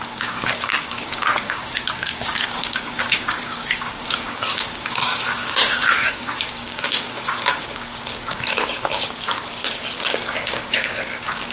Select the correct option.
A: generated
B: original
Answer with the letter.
A